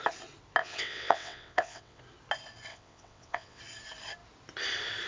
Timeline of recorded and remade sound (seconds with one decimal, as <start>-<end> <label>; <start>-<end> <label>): 0.0-0.6 recorded; 0.6-2.0 remade; 2.0-2.7 recorded; 2.7-3.6 remade; 3.6-5.1 recorded